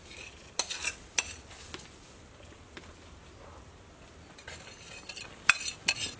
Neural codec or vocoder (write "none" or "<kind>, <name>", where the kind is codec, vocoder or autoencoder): none